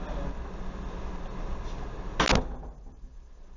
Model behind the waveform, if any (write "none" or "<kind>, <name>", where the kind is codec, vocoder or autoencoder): none